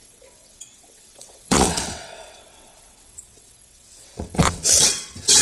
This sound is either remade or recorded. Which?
remade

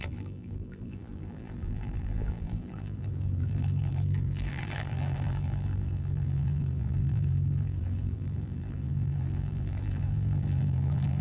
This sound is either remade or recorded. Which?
remade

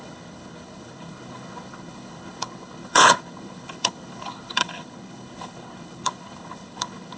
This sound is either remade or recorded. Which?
remade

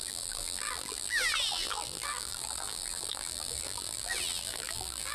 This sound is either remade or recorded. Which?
remade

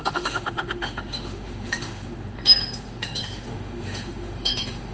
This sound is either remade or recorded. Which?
remade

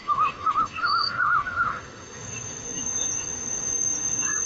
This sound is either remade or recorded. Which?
remade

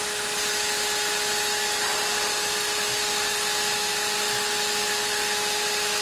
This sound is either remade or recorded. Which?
recorded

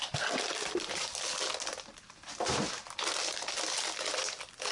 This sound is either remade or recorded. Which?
recorded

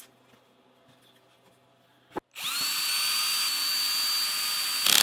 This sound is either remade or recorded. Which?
recorded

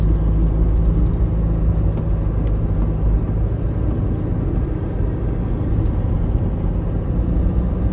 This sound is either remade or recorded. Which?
recorded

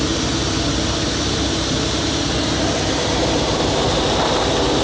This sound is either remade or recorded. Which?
remade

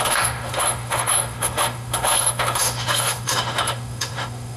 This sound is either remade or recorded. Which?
remade